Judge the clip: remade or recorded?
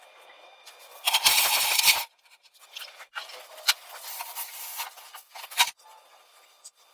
remade